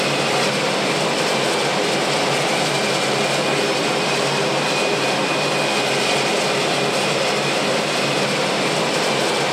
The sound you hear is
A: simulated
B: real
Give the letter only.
B